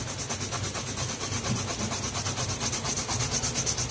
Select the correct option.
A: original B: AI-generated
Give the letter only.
A